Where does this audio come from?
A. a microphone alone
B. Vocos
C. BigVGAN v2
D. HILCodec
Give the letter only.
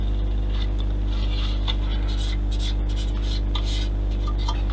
A